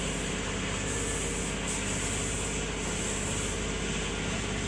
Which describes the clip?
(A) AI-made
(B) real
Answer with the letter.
B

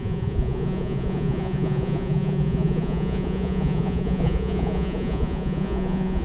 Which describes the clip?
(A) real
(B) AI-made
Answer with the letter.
B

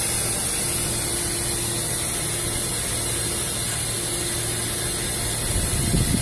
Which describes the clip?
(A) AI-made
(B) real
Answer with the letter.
B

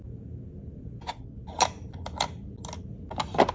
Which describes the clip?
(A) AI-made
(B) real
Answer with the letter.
B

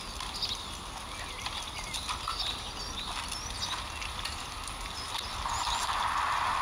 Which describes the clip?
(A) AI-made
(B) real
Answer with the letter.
B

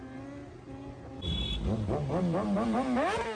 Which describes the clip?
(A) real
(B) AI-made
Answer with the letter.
A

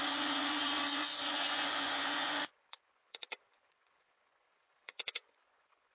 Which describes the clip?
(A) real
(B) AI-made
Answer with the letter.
B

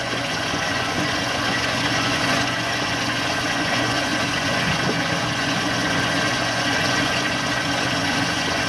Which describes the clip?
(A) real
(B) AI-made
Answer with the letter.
B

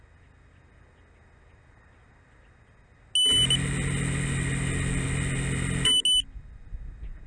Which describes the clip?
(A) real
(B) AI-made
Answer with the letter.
A